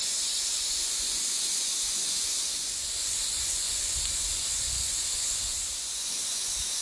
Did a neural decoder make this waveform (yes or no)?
yes